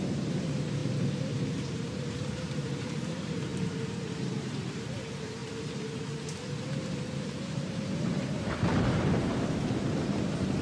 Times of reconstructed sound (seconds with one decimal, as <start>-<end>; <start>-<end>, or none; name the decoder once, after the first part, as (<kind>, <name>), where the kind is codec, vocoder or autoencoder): 0.0-5.4 (vocoder, BigVGAN v2); 7.0-10.6